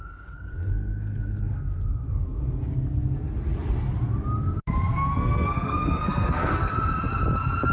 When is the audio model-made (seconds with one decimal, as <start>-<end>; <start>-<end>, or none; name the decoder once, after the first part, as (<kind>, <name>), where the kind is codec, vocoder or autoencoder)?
0.5-2.7 (codec, SNAC); 4.9-6.7